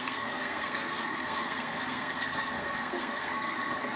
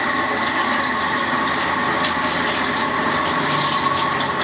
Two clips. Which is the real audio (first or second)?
second